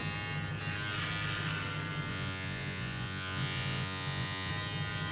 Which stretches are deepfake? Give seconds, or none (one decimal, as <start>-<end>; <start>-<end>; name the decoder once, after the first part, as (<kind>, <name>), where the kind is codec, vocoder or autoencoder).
2.1-4.5 (vocoder, Vocos)